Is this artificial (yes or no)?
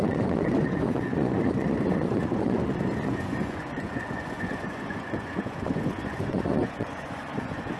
yes